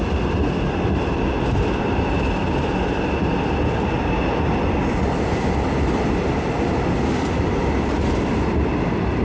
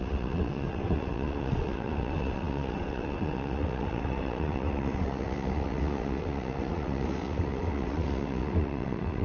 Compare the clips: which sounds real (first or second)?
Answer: first